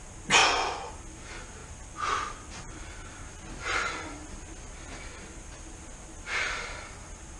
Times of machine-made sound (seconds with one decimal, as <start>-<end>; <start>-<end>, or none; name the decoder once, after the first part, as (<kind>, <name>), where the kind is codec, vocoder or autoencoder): 0.4-0.9 (vocoder, Vocos)